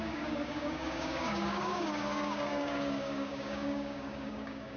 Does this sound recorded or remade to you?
remade